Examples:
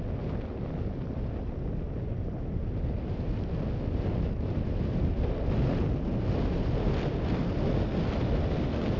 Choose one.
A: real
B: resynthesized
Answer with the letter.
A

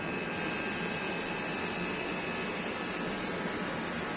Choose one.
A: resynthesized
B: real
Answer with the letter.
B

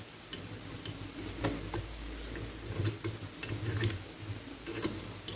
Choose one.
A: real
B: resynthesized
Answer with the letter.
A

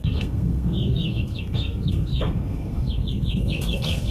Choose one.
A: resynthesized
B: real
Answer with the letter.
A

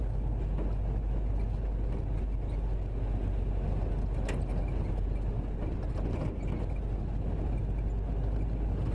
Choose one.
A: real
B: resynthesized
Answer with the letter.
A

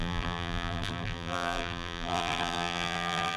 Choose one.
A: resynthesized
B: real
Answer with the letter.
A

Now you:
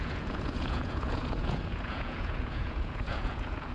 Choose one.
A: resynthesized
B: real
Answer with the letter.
A